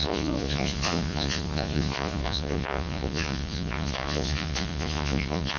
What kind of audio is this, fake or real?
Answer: fake